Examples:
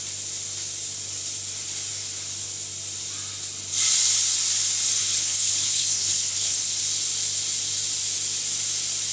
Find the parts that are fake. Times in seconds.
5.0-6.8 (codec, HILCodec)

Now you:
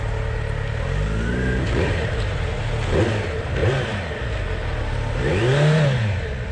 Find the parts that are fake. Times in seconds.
none

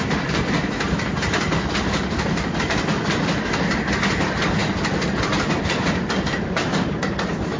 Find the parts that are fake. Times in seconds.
none

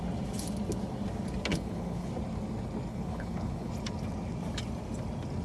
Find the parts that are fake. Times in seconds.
1.5-2.1 (codec, HILCodec); 2.9-3.7

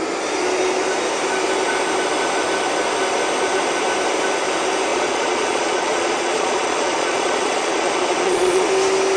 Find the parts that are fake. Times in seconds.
4.9-8.7 (vocoder, Vocos)